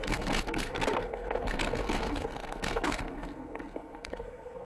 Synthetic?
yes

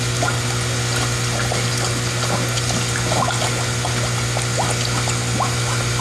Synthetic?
no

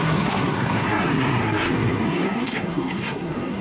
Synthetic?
yes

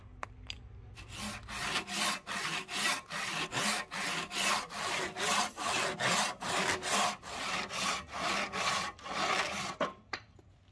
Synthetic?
no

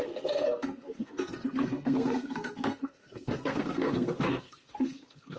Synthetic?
yes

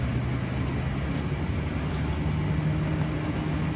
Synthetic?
no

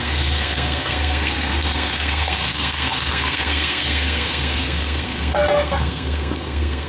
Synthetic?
yes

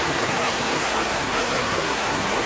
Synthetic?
yes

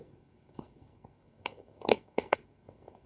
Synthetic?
yes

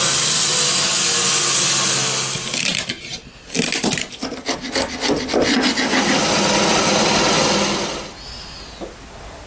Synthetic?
no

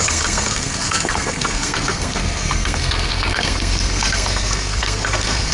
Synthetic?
yes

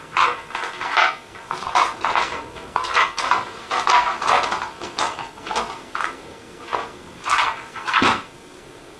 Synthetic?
yes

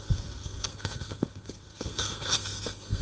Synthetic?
yes